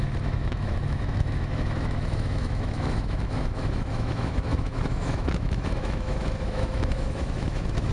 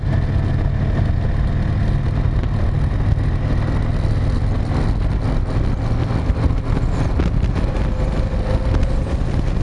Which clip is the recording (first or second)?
second